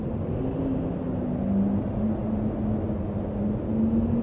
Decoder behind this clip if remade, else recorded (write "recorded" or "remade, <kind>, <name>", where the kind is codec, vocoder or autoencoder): recorded